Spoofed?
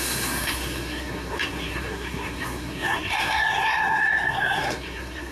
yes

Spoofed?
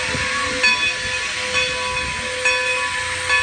no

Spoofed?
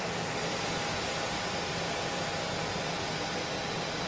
no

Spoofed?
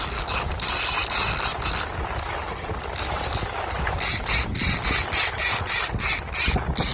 no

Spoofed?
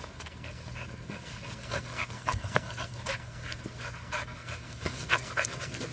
yes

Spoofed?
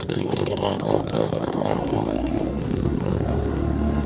yes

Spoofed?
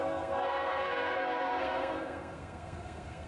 yes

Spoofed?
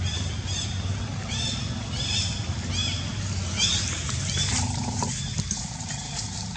no